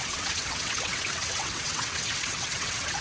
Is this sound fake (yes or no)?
yes